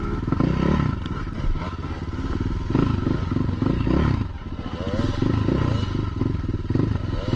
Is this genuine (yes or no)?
yes